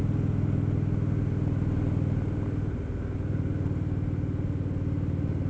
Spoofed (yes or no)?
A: no